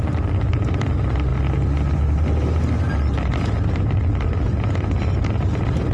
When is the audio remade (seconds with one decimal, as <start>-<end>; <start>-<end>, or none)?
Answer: none